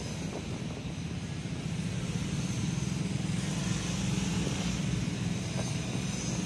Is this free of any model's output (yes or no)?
yes